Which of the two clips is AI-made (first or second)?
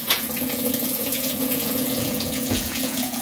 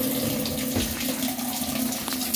first